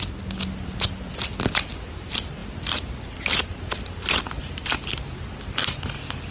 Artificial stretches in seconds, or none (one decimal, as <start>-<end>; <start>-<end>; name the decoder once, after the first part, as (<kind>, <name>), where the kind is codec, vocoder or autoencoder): none